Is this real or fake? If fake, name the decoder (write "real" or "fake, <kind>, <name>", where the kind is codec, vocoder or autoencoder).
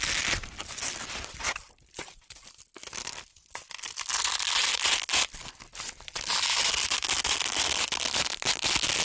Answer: real